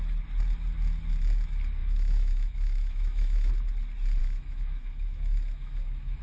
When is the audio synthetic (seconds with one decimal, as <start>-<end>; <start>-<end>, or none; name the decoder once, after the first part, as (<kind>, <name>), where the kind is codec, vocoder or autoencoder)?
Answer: 1.8-3.5 (autoencoder, DAC-VAE); 4.2-6.2